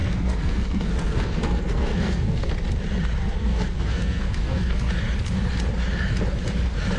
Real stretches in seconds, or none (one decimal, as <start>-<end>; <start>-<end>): 2.5-3.2; 4.9-7.0